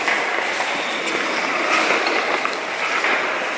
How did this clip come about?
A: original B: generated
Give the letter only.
A